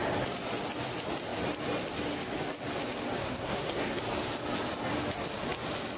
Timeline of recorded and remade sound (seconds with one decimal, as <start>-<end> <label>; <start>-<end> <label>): 0.0-3.2 recorded; 3.2-4.0 remade; 4.0-6.0 recorded